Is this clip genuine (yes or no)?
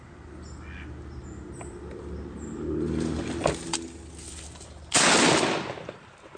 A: yes